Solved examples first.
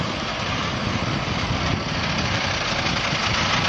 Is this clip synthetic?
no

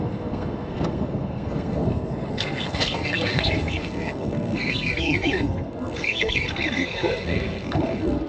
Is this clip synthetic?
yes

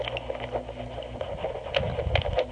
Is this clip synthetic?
no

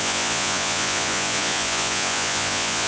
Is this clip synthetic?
yes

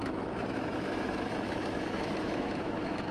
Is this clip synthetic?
yes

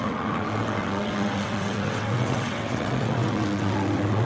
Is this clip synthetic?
yes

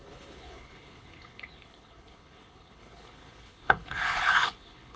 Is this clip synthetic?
yes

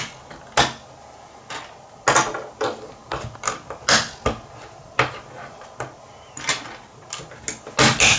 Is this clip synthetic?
no